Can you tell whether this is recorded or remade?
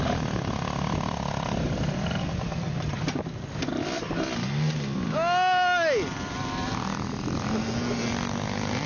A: recorded